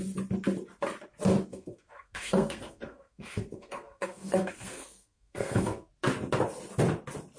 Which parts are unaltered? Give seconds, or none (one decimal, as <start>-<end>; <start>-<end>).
0.0-1.5; 5.9-7.4